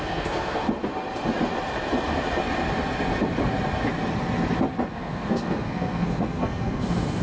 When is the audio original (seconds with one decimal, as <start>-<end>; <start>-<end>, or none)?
0.6-4.9